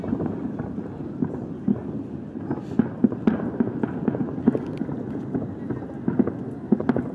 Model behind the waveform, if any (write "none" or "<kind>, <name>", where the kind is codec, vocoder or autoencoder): none